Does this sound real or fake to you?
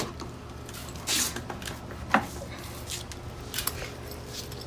real